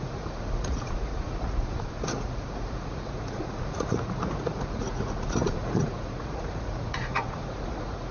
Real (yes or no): no